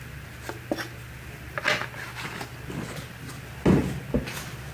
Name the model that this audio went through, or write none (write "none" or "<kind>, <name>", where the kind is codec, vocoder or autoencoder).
none